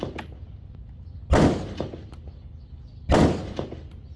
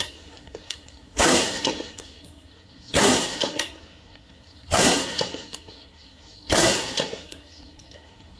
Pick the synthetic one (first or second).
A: second